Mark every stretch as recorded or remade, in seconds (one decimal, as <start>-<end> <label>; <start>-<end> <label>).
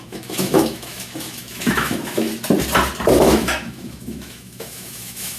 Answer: 0.0-2.3 remade; 2.3-3.2 recorded; 3.2-5.4 remade